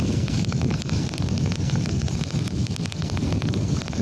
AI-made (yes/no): yes